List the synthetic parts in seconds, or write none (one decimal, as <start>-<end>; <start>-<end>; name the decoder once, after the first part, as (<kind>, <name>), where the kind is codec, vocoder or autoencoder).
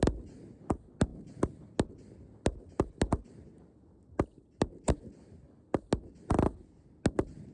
none